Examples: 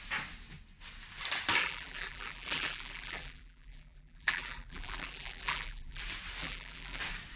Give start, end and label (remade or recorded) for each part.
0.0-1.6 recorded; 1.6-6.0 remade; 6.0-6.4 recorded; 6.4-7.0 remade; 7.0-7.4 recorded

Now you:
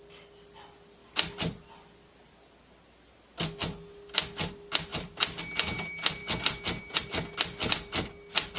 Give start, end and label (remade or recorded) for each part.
0.0-8.6 recorded

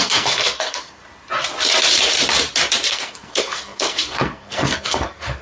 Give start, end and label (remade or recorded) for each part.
0.0-1.0 remade; 1.0-2.9 recorded; 2.9-5.4 remade

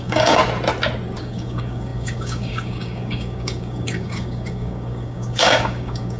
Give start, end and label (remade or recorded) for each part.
0.0-0.4 remade; 0.4-1.2 recorded; 1.2-6.2 remade

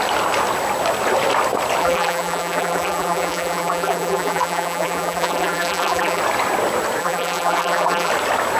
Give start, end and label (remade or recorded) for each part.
0.0-1.8 recorded; 1.8-6.2 remade; 6.2-7.0 recorded; 7.0-8.1 remade; 8.1-8.6 recorded

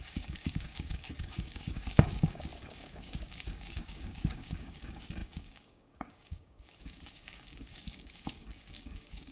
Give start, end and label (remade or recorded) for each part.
0.0-9.3 remade

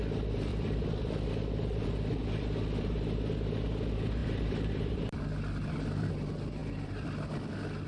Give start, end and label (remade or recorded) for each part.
0.0-0.5 recorded; 0.5-1.3 remade; 1.3-4.2 recorded; 4.2-6.1 remade; 6.1-6.6 recorded; 6.6-7.3 remade; 7.3-7.9 recorded

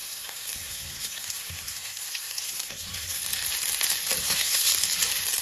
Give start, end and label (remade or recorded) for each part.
0.0-3.2 remade; 3.2-4.2 recorded; 4.2-4.7 remade; 4.7-5.4 recorded